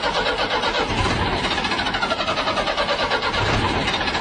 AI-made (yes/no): no